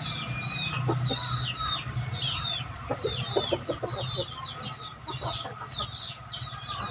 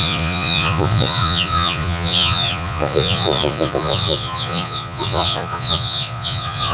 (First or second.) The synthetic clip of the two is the second